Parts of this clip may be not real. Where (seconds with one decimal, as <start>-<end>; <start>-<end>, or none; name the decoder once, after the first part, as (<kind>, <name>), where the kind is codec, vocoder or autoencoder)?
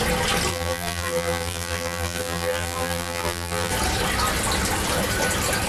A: 0.5-3.7 (vocoder, BigVGAN v2)